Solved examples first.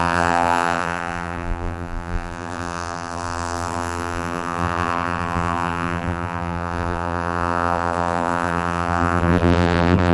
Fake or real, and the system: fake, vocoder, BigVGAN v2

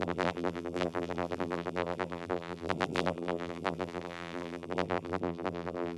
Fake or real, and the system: fake, vocoder, BigVGAN v2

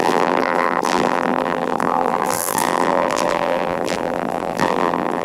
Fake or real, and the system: fake, vocoder, BigVGAN v2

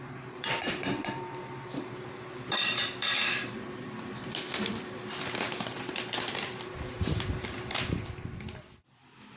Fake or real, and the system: fake, vocoder, BigVGAN v2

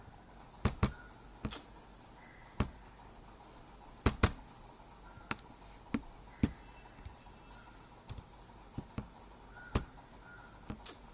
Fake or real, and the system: real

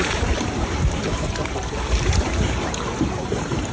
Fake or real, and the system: fake, vocoder, BigVGAN v2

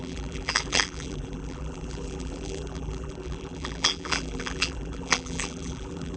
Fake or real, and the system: fake, vocoder, BigVGAN v2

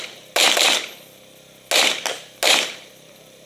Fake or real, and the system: real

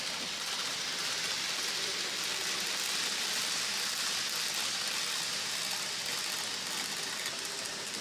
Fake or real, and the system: real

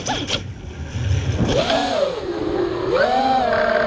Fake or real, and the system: real